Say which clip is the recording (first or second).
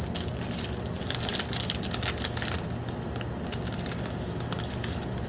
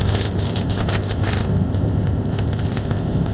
first